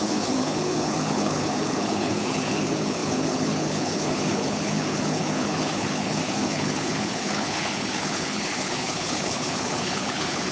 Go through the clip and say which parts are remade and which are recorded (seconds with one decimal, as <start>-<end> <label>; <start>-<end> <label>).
0.0-10.5 remade